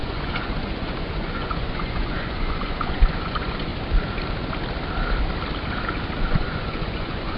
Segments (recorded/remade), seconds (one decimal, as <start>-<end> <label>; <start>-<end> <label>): 0.0-3.7 remade; 3.7-6.3 recorded; 6.3-7.4 remade